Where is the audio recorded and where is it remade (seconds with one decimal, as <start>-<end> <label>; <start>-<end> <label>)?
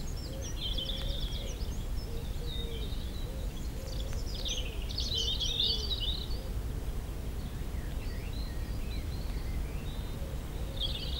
0.0-11.2 recorded